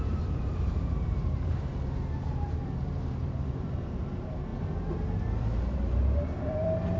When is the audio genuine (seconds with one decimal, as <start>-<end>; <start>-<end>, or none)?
1.7-2.3; 4.5-5.4